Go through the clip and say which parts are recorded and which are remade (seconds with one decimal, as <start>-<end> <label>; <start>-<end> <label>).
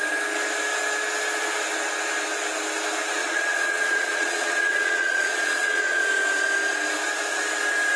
0.0-3.2 recorded; 3.2-6.0 remade; 6.0-8.0 recorded